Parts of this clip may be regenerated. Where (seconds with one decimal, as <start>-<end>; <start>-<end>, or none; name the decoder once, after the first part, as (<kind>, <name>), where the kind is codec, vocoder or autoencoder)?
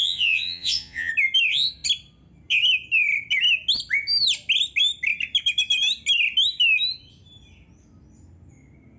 0.0-1.1 (vocoder, Vocos)